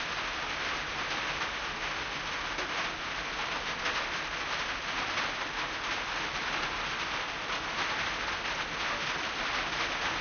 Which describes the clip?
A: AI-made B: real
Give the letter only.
B